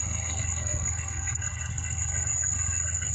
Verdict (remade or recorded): remade